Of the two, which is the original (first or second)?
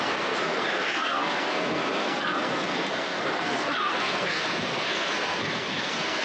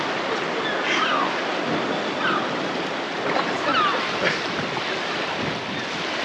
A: second